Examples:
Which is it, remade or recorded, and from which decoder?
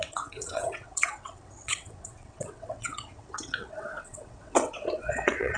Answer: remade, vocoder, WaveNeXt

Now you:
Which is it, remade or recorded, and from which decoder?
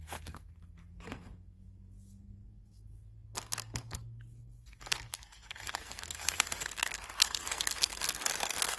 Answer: remade, codec, SNAC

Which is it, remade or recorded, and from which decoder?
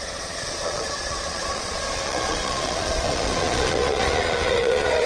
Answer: remade, vocoder, Vocos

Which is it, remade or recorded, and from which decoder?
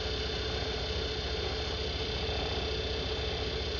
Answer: recorded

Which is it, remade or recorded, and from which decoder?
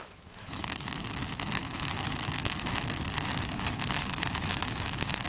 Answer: remade, autoencoder, DAC-VAE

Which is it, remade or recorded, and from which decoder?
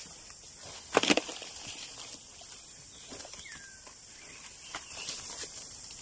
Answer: remade, vocoder, BigVGAN v2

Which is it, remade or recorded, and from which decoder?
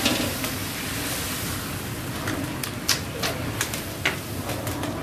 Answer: recorded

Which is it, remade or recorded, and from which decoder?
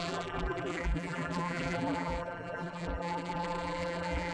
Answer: remade, vocoder, BigVGAN v2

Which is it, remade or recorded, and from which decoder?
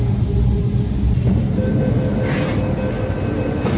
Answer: recorded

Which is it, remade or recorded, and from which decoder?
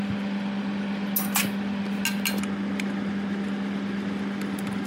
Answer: recorded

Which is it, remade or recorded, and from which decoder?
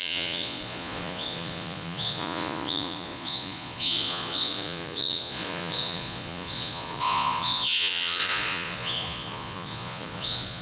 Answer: remade, vocoder, Vocos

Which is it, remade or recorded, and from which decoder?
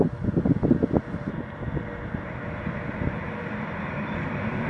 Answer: recorded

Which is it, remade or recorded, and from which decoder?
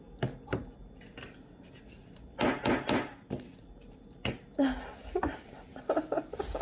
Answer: recorded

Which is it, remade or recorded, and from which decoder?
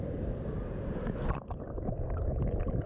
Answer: remade, vocoder, BigVGAN v2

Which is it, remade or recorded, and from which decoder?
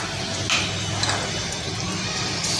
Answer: recorded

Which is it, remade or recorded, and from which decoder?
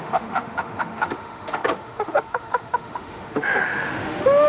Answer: remade, autoencoder, DAC-VAE